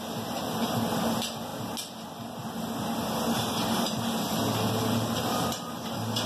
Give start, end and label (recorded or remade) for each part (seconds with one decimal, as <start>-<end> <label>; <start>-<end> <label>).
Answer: 0.0-6.3 recorded

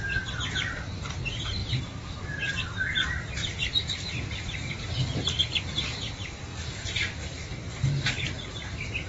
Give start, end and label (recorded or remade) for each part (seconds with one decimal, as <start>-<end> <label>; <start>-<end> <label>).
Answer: 0.0-1.6 recorded; 1.6-2.2 remade; 2.2-3.4 recorded; 3.4-5.6 remade; 5.6-6.5 recorded; 6.5-7.5 remade; 7.5-9.1 recorded